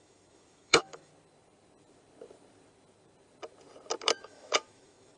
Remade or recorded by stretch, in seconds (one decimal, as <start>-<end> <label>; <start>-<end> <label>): 0.0-1.1 remade; 1.1-4.2 recorded; 4.2-5.2 remade